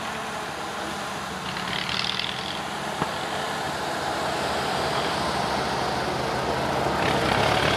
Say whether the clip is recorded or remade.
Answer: recorded